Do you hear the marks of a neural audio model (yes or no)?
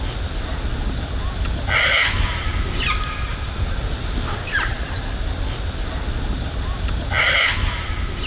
no